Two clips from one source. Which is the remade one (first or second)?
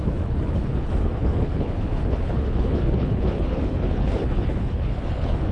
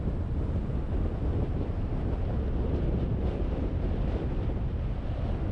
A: first